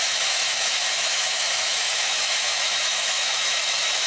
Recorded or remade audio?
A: remade